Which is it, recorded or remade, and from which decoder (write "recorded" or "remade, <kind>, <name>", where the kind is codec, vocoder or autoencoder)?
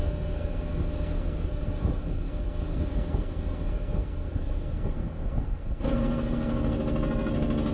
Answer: remade, codec, SNAC